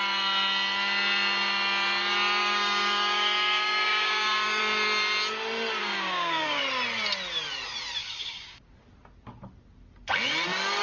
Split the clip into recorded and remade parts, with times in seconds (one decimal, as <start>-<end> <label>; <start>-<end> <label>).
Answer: 0.0-2.4 recorded; 2.4-4.6 remade; 4.6-5.8 recorded; 5.8-6.6 remade; 6.6-8.0 recorded; 8.0-8.6 remade; 8.6-10.8 recorded

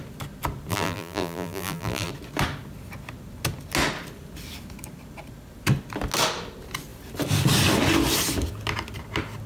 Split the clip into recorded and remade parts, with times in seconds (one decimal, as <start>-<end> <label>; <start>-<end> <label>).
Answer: 0.0-0.7 recorded; 0.7-2.1 remade; 2.1-9.5 recorded